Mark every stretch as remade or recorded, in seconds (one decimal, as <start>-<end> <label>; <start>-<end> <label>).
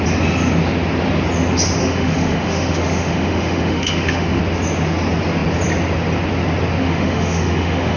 0.0-1.8 recorded; 1.8-4.4 remade; 4.4-6.8 recorded; 6.8-8.0 remade